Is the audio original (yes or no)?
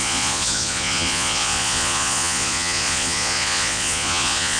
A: no